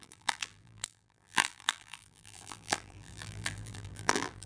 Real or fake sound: fake